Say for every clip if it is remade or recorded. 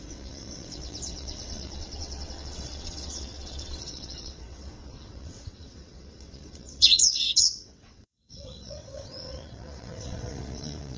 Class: remade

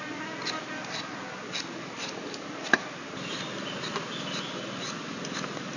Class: recorded